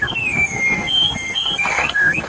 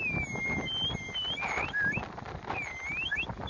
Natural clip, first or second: second